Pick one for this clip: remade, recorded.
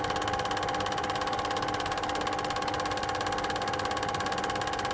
recorded